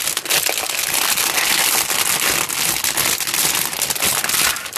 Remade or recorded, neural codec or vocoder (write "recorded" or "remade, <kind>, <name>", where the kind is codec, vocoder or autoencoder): recorded